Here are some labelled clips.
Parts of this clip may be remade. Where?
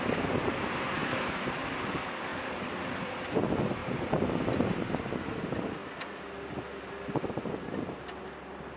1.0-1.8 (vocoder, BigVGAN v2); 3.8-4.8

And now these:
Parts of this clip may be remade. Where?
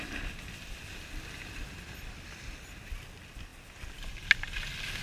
none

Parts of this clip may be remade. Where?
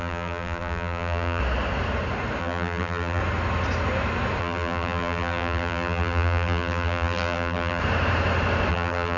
0.0-1.4 (vocoder, BigVGAN v2); 2.4-3.2; 4.4-7.8; 8.7-9.2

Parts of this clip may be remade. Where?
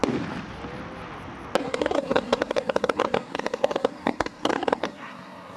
1.6-5.6 (codec, SNAC)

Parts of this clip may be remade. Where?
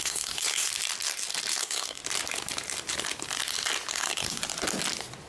0.0-0.7 (codec, SNAC); 1.6-2.0; 3.9-4.4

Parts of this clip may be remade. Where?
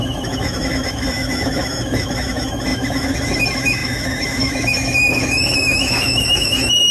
0.0-6.9 (autoencoder, DAC-VAE)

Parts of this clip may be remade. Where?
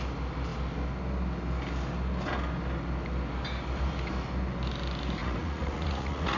5.2-6.4 (vocoder, Vocos)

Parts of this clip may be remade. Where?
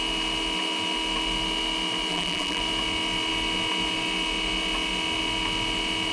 2.1-2.6 (vocoder, BigVGAN v2)